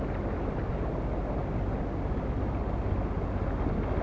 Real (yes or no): yes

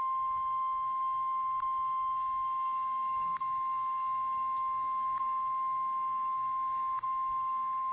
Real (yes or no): no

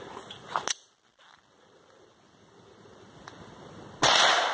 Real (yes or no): yes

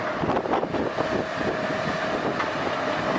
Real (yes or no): yes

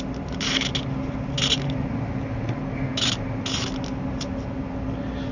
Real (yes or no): yes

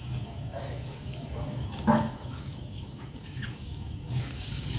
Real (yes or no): no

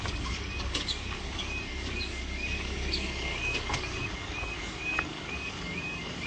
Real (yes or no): no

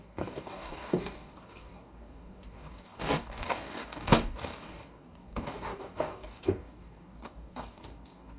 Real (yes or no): no